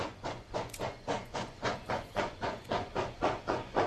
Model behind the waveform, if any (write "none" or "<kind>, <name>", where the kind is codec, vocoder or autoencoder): vocoder, Vocos